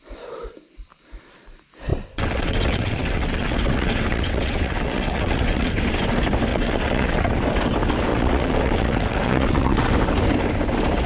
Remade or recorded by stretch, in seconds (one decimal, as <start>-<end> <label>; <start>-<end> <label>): 0.0-1.9 recorded; 1.9-5.8 remade; 5.8-6.5 recorded; 6.5-7.3 remade; 7.3-8.1 recorded; 8.1-9.9 remade; 9.9-11.1 recorded